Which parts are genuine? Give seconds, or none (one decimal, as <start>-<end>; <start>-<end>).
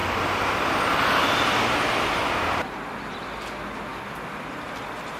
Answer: 0.0-5.2